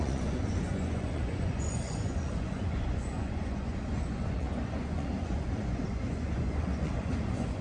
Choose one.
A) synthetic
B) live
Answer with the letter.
A